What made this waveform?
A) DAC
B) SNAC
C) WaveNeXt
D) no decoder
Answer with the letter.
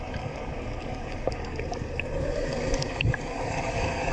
A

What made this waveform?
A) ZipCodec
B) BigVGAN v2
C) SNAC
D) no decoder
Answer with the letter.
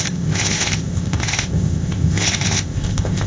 A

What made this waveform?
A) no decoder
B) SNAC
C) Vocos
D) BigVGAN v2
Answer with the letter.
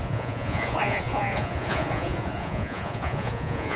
C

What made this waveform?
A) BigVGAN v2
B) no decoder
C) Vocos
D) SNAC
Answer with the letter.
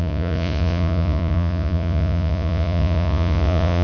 C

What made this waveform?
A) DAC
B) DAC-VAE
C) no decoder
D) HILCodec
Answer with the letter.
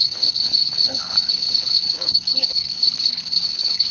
D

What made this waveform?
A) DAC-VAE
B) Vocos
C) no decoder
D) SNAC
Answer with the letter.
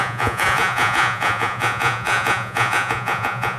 B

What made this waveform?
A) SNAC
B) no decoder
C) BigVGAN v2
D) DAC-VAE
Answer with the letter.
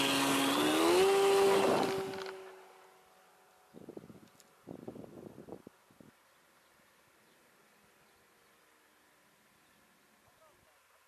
B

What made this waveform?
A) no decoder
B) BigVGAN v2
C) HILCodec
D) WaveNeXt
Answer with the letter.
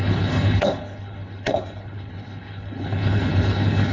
C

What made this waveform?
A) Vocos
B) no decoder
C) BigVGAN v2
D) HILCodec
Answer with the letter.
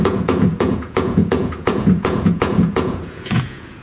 A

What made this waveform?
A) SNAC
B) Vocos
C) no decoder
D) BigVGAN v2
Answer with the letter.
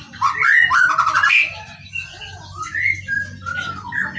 C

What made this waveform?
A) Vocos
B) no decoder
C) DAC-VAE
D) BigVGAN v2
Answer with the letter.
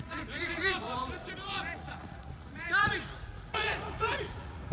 A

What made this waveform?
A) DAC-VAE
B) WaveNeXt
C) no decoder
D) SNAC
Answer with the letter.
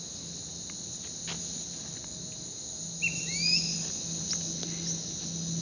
C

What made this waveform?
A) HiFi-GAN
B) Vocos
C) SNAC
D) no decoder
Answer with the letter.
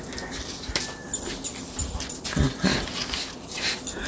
D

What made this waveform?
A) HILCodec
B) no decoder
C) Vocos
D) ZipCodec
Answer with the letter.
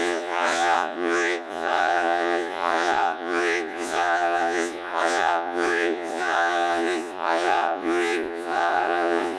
C